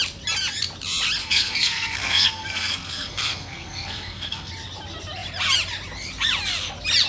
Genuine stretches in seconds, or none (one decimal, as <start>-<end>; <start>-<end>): 0.0-1.2; 4.5-7.1

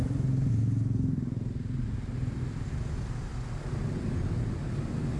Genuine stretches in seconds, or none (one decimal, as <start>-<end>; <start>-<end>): 0.0-5.2

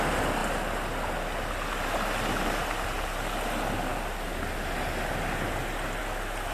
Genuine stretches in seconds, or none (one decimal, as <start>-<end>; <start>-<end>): 0.0-6.5

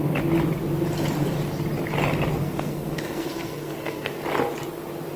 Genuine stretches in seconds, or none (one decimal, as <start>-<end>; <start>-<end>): 0.0-2.3; 4.1-5.2

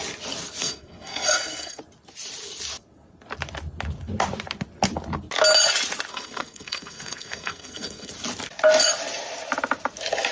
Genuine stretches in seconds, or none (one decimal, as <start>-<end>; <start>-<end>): 0.0-0.6; 1.8-6.1; 8.1-10.3

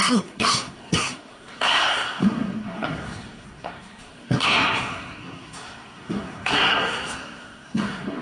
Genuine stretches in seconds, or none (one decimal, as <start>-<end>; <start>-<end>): none